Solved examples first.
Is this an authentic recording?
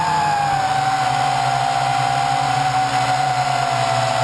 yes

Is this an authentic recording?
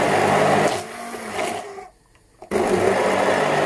yes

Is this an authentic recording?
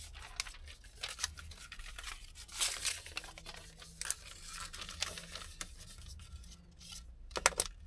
yes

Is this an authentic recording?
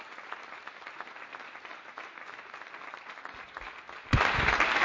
yes